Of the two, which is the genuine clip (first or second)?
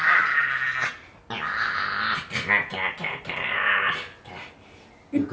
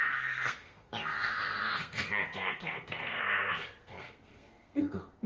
first